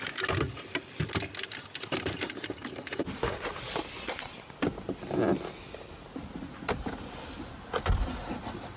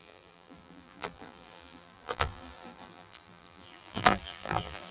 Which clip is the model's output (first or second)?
second